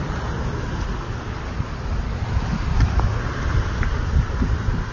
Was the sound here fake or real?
real